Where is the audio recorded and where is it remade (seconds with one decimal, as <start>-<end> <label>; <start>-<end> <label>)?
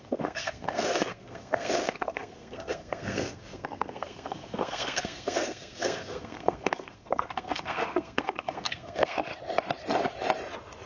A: 0.0-9.3 remade; 9.3-10.9 recorded